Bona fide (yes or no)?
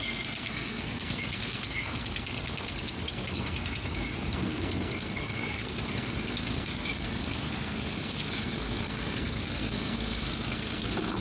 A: no